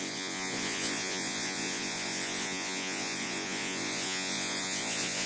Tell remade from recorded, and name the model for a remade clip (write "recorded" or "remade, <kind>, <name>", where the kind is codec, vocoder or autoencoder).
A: remade, vocoder, Vocos